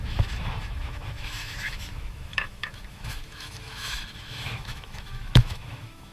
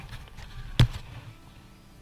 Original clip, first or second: second